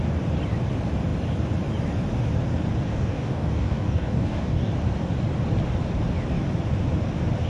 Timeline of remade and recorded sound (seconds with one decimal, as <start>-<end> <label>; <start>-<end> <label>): 0.0-2.9 recorded; 2.9-4.7 remade; 4.7-7.5 recorded

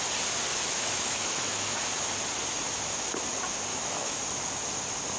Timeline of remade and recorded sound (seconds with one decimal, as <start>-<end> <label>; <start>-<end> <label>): 0.0-0.5 recorded; 0.5-1.8 remade; 1.8-3.7 recorded; 3.7-4.2 remade; 4.2-5.2 recorded

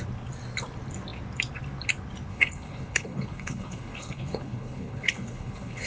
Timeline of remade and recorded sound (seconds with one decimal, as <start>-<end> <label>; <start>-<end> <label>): 0.0-2.3 recorded; 2.3-5.9 remade

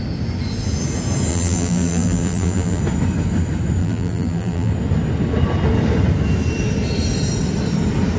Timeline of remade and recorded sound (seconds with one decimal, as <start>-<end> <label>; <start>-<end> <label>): 0.0-1.3 recorded; 1.3-2.8 remade; 2.8-3.8 recorded; 3.8-4.7 remade; 4.7-8.2 recorded

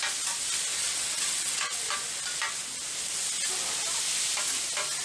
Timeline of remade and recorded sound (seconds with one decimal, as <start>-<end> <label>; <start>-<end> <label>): 0.0-0.8 recorded; 0.8-1.9 remade; 1.9-5.0 recorded